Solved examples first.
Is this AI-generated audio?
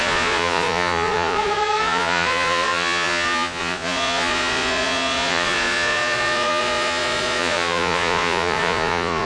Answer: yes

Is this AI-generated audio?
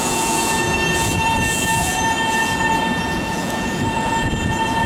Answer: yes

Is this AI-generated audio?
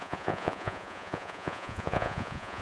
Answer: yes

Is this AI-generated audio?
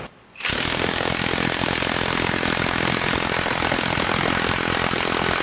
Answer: no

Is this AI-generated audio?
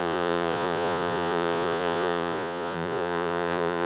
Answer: yes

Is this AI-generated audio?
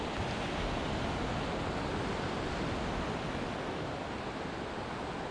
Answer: no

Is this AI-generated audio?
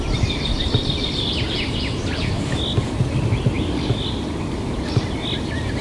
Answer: no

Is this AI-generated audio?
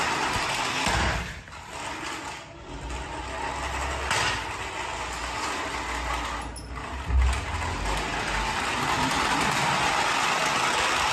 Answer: no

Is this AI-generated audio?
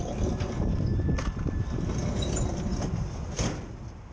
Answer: no